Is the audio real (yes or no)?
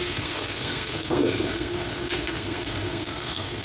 no